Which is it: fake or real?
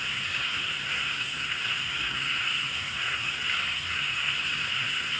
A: fake